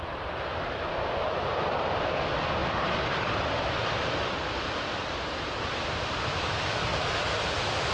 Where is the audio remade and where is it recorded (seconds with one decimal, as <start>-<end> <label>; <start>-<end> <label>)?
0.0-2.6 recorded; 2.6-6.6 remade; 6.6-7.9 recorded